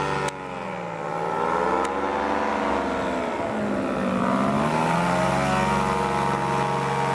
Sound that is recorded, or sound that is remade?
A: recorded